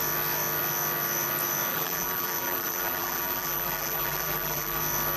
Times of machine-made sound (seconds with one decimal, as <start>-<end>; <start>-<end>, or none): 1.7-4.8